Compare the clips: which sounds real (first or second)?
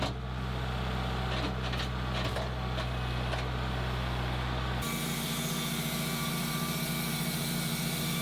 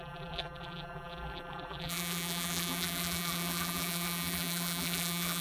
first